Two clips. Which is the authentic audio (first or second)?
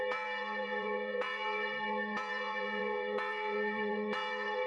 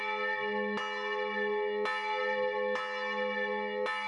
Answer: second